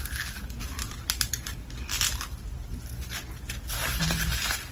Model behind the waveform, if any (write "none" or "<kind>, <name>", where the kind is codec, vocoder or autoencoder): none